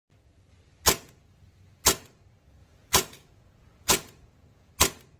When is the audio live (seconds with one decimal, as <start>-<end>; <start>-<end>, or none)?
0.0-2.6; 4.7-5.2